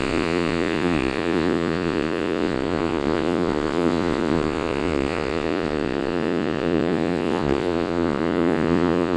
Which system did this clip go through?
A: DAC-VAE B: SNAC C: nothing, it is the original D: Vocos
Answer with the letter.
D